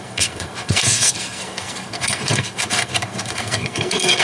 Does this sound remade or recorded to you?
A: remade